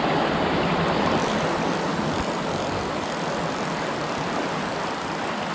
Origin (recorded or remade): recorded